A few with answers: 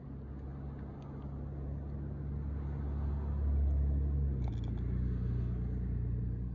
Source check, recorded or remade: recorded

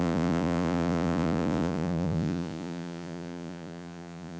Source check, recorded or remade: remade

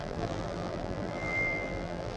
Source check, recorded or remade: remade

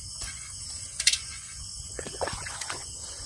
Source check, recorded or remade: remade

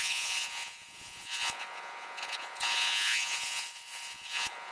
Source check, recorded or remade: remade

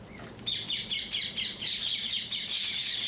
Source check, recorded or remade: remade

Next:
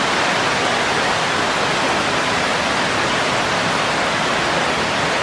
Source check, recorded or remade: recorded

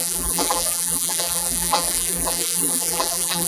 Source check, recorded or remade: remade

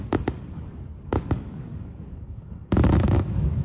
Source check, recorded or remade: remade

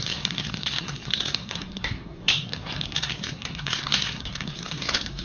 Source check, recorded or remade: remade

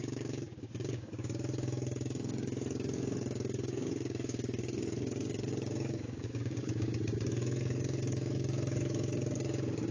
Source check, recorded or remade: remade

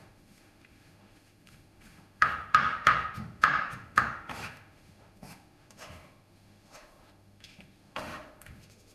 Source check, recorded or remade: remade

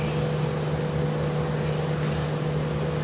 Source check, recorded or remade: recorded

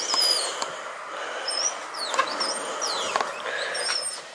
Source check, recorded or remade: recorded